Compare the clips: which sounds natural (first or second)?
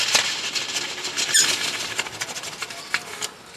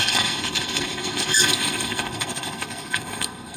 first